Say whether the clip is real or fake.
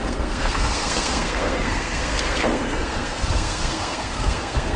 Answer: fake